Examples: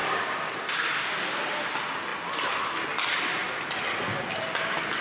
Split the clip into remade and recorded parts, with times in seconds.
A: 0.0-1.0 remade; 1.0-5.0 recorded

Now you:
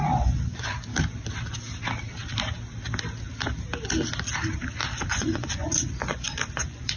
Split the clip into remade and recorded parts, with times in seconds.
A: 0.0-0.9 remade; 0.9-5.1 recorded; 5.1-7.0 remade

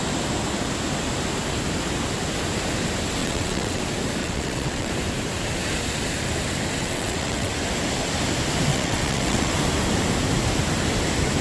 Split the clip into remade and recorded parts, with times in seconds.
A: 0.0-3.2 recorded; 3.2-3.8 remade; 3.8-4.2 recorded; 4.2-4.9 remade; 4.9-6.8 recorded; 6.8-7.5 remade; 7.5-8.7 recorded; 8.7-9.5 remade; 9.5-11.4 recorded

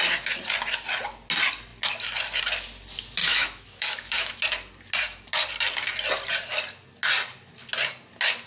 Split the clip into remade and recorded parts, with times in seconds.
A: 0.0-3.2 recorded; 3.2-4.3 remade; 4.3-8.5 recorded

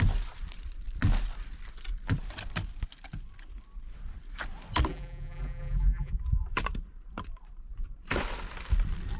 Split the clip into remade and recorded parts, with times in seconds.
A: 0.0-4.9 recorded; 4.9-6.1 remade; 6.1-9.2 recorded